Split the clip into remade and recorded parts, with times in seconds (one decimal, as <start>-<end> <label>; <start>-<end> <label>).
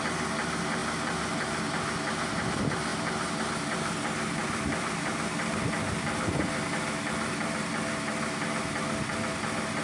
0.0-2.9 recorded; 2.9-3.4 remade; 3.4-4.4 recorded; 4.4-6.7 remade; 6.7-9.8 recorded